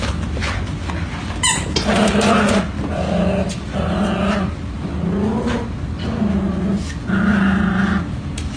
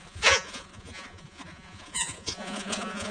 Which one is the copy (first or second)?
second